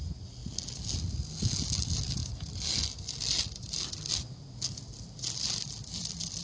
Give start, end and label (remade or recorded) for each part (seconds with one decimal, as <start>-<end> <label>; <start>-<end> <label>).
0.0-6.4 recorded